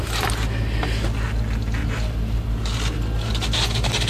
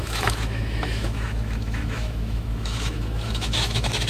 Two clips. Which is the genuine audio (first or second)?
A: first